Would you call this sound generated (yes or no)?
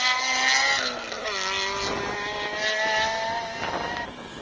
no